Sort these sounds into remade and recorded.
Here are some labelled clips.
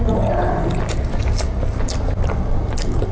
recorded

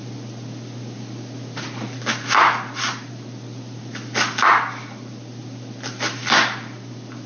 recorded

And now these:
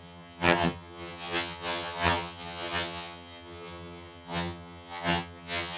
remade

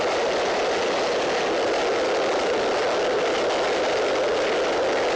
recorded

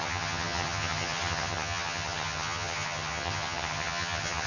remade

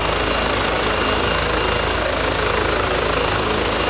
recorded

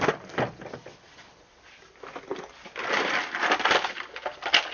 recorded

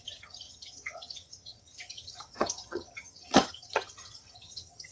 remade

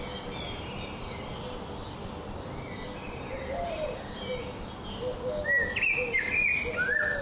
recorded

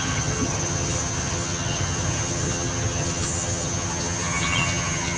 remade